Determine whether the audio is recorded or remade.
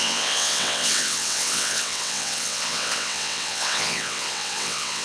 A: remade